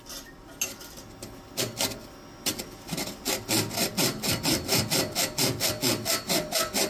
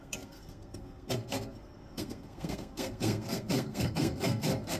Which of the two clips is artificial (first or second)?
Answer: second